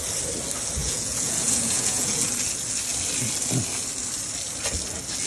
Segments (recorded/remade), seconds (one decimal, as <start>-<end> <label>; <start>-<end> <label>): 0.0-0.8 recorded; 0.8-2.3 remade; 2.3-5.3 recorded

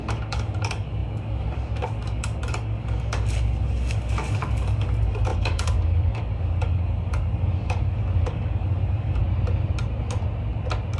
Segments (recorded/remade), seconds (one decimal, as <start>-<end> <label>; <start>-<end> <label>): 0.0-9.2 remade; 9.2-11.0 recorded

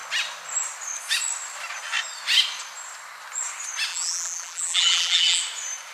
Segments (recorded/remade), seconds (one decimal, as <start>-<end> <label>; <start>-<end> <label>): 0.0-3.9 recorded; 3.9-5.4 remade; 5.4-5.9 recorded

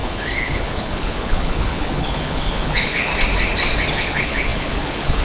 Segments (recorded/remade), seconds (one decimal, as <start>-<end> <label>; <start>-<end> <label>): 0.0-3.1 remade; 3.1-4.0 recorded; 4.0-5.2 remade